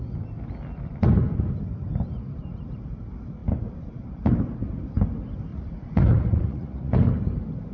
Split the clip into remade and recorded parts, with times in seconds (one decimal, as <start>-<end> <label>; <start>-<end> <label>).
0.0-5.5 recorded; 5.5-7.1 remade; 7.1-7.7 recorded